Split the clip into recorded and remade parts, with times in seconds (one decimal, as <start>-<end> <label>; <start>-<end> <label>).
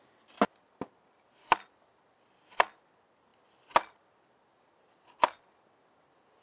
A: 0.0-6.4 recorded